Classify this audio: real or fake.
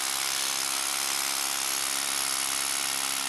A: real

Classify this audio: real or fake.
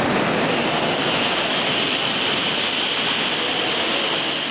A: real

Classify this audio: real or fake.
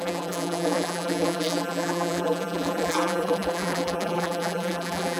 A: fake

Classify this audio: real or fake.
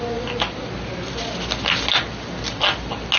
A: real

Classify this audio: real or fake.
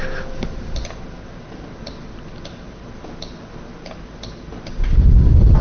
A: real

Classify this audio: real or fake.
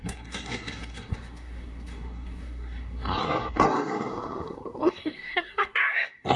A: fake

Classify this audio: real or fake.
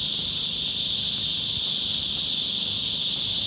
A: real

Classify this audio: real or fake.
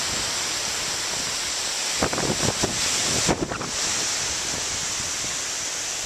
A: real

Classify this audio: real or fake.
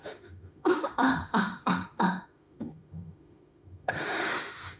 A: fake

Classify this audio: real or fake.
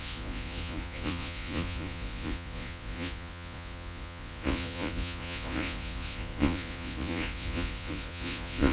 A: fake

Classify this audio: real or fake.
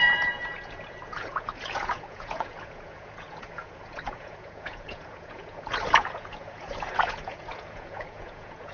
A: fake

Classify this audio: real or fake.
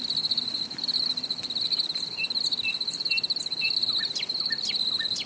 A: real